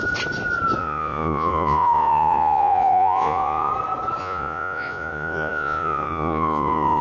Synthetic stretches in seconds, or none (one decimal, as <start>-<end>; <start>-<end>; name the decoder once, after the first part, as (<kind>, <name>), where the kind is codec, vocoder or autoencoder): 0.8-3.7 (vocoder, Vocos); 4.2-7.0